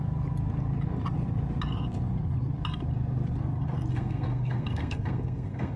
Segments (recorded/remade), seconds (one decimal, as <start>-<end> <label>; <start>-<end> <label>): 0.0-3.9 recorded; 3.9-5.8 remade

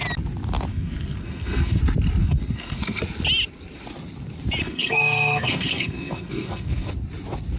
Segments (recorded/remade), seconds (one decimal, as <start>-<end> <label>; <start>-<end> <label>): 0.0-0.7 recorded; 0.7-1.8 remade; 1.8-2.2 recorded; 2.2-3.0 remade; 3.0-4.6 recorded; 4.6-6.9 remade; 6.9-7.6 recorded